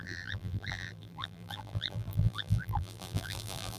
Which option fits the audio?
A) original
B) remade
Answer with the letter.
B